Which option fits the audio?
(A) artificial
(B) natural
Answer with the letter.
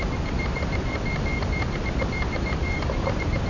B